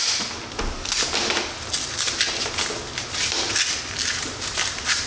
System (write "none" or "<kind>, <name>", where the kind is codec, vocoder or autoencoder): none